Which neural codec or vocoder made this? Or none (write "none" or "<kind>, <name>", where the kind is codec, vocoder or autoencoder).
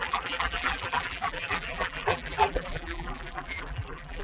vocoder, BigVGAN v2